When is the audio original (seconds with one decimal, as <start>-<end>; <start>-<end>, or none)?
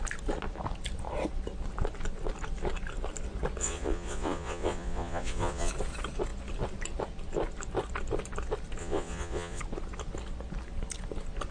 0.0-3.6; 5.7-8.8; 9.6-11.5